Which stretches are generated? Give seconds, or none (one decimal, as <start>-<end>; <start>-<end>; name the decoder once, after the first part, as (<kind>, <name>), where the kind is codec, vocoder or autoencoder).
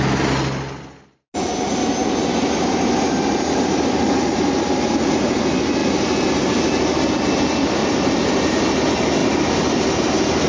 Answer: 7.8-8.5 (vocoder, BigVGAN v2); 9.2-9.9